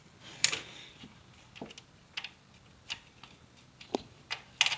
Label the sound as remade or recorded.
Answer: recorded